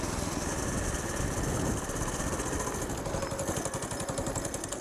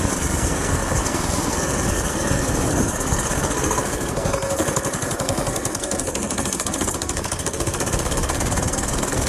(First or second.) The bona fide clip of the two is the first